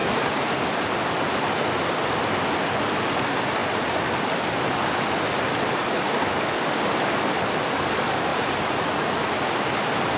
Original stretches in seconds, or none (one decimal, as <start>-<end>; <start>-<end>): 0.5-8.3; 9.3-10.2